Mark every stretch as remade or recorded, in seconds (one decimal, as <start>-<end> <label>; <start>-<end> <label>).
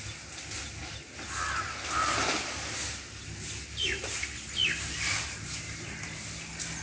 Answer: 0.0-6.8 recorded